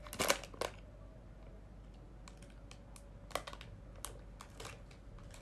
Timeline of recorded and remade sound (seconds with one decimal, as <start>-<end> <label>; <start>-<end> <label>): 0.0-5.4 recorded